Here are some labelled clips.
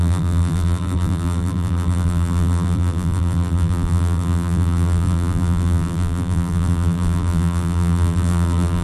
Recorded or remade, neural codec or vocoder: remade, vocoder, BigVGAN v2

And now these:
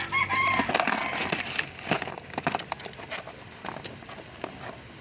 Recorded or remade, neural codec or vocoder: recorded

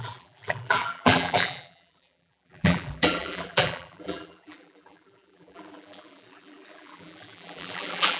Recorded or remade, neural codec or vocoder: remade, vocoder, BigVGAN v2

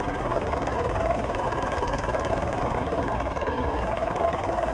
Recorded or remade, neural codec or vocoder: remade, codec, SNAC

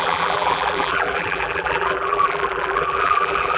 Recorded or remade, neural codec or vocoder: remade, vocoder, BigVGAN v2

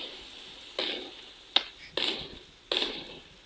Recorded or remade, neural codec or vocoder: recorded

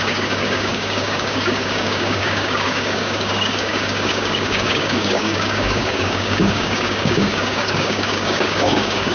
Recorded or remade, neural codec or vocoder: remade, codec, DAC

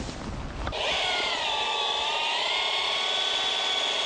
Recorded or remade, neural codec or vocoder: recorded